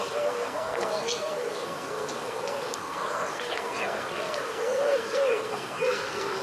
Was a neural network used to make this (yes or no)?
yes